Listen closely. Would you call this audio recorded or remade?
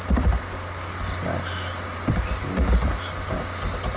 recorded